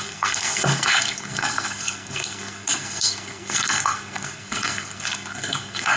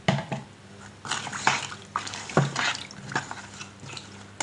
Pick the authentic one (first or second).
second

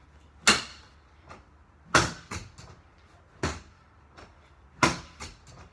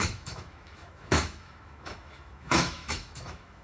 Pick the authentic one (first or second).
first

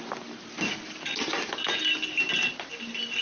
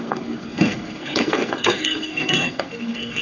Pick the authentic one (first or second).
first